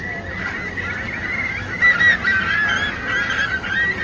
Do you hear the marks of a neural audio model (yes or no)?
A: no